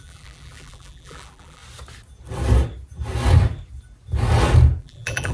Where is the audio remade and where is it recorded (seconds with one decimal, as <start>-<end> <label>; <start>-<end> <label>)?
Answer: 0.0-1.6 remade; 1.6-4.8 recorded; 4.8-5.3 remade